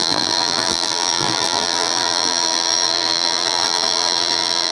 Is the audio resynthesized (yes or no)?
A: yes